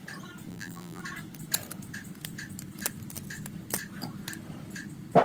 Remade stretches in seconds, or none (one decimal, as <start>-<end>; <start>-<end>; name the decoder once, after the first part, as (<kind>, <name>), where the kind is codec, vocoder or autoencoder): 0.5-1.0 (vocoder, BigVGAN v2)